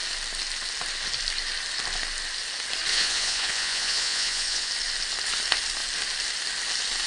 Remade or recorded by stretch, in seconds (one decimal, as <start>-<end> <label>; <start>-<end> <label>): 0.0-2.9 recorded; 2.9-4.7 remade; 4.7-7.1 recorded